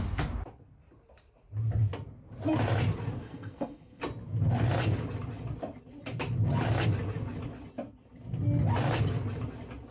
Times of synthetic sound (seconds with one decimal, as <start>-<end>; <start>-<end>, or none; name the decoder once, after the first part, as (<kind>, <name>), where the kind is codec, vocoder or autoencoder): 3.2-4.0 (codec, SNAC)